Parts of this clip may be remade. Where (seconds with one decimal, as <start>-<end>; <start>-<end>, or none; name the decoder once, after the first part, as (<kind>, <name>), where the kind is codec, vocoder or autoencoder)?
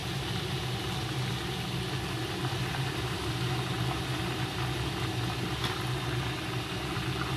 0.0-1.3 (vocoder, BigVGAN v2)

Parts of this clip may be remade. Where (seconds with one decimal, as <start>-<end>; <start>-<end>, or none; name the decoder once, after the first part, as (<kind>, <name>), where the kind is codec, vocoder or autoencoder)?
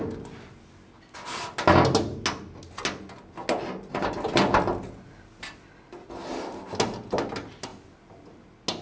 none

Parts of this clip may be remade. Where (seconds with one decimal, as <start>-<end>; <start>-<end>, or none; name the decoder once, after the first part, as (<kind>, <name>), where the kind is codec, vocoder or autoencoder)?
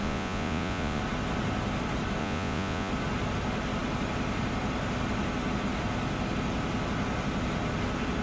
0.0-1.0 (vocoder, Vocos); 2.2-2.9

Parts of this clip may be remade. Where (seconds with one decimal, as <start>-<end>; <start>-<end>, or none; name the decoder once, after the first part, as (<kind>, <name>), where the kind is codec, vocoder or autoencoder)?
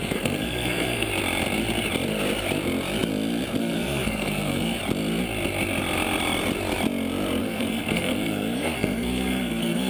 0.0-1.1 (codec, SNAC); 3.6-4.8; 7.4-9.9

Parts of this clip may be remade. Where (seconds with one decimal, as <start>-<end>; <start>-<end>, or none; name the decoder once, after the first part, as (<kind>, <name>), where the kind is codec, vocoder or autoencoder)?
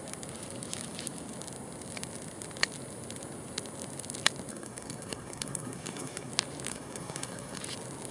4.5-6.3 (codec, SNAC); 6.7-7.6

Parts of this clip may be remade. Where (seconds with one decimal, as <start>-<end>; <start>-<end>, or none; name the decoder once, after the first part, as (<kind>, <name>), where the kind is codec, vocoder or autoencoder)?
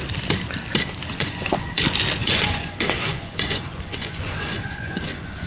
1.1-1.8 (vocoder, Vocos); 2.2-5.5